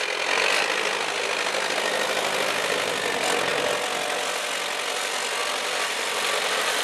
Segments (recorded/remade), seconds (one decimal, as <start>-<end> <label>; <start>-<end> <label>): 0.0-6.8 recorded